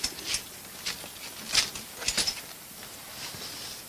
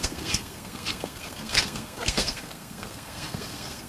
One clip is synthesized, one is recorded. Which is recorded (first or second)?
first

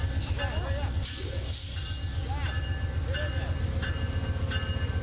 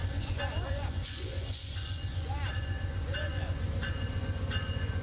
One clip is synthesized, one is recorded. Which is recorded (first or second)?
first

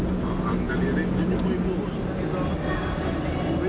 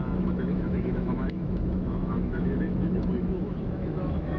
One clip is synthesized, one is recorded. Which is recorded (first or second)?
first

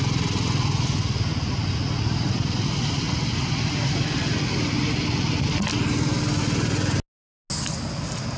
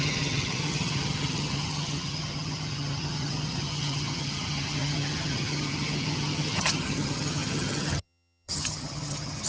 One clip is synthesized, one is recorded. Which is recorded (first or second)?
first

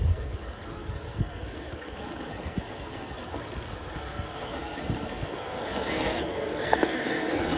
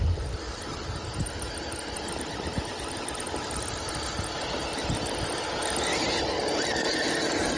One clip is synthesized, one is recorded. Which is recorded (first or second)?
second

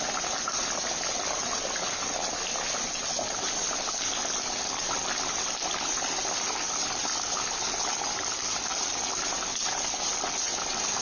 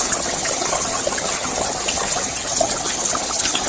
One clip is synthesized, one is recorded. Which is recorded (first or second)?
first